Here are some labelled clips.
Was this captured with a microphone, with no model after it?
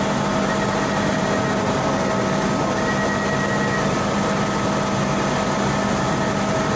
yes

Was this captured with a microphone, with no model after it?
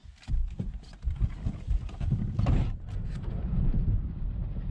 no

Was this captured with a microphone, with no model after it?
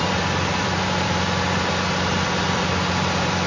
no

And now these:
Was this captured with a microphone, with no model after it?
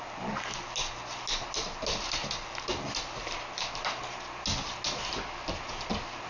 yes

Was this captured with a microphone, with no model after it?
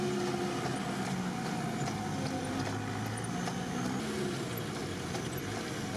yes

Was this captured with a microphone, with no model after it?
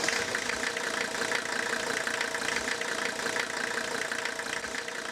yes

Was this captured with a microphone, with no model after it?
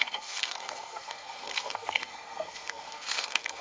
no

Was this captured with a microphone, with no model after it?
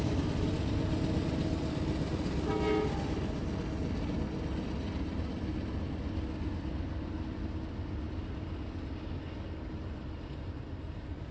yes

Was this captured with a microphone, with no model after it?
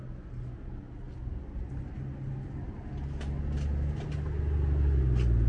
yes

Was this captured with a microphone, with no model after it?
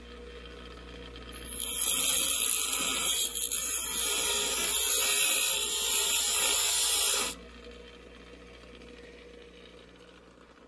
yes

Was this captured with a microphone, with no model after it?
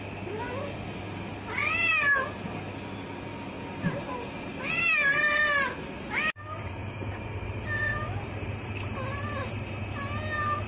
yes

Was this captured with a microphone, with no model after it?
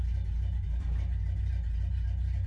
yes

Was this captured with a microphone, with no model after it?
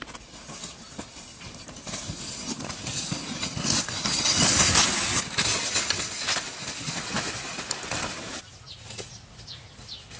yes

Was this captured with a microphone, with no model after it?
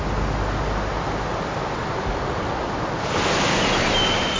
yes